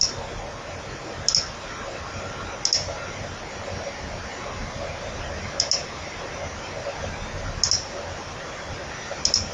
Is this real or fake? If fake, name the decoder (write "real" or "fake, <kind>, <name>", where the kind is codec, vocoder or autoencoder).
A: real